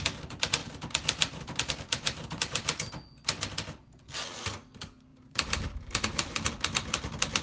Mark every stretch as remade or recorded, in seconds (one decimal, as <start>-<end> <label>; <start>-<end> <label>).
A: 0.0-0.6 recorded; 0.6-2.9 remade; 2.9-5.1 recorded; 5.1-6.5 remade; 6.5-7.4 recorded